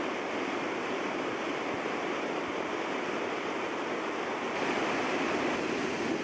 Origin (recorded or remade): recorded